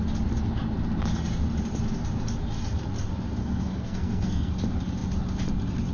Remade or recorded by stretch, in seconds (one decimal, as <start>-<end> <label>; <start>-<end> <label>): 0.0-3.4 recorded; 3.4-4.5 remade; 4.5-5.9 recorded

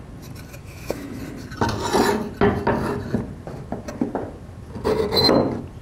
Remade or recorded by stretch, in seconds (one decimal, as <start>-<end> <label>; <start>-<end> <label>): 0.0-0.6 recorded; 0.6-1.2 remade; 1.2-5.8 recorded